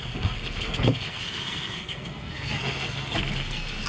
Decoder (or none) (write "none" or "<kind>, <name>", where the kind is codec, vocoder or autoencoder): codec, SNAC